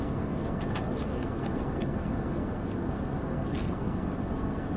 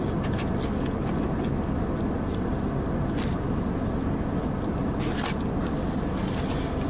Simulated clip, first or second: first